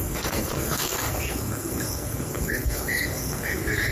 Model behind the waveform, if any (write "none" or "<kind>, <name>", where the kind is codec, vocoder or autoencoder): codec, SNAC